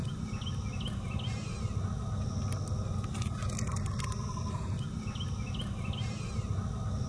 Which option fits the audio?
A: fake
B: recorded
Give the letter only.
B